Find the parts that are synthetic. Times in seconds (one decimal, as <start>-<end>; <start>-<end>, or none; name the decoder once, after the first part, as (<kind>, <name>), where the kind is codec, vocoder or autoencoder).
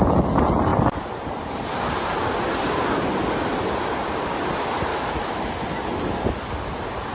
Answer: 4.9-5.5 (autoencoder, DAC-VAE)